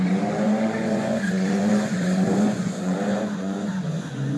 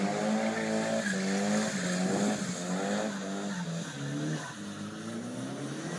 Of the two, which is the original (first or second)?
second